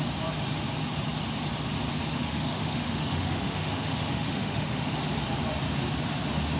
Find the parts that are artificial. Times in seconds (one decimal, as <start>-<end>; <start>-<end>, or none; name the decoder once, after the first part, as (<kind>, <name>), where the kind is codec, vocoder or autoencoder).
2.1-5.0 (autoencoder, DAC-VAE)